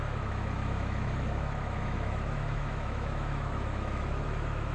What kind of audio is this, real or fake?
fake